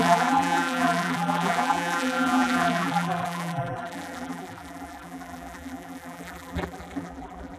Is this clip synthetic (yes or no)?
yes